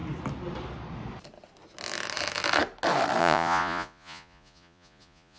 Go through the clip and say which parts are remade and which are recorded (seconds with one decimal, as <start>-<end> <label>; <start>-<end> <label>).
0.0-3.2 recorded; 3.2-5.4 remade